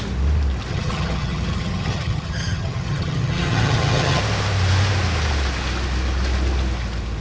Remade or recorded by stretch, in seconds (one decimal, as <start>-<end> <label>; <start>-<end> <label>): 0.0-0.7 recorded; 0.7-4.2 remade; 4.2-7.2 recorded

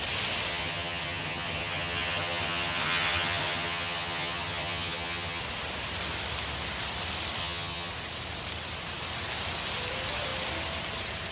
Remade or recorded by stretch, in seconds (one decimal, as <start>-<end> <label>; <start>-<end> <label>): 0.0-0.5 recorded; 0.5-5.4 remade; 5.4-7.4 recorded; 7.4-7.9 remade; 7.9-11.3 recorded

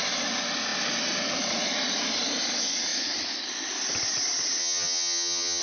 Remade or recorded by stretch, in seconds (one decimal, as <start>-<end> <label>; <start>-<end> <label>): 0.0-4.6 recorded; 4.6-5.6 remade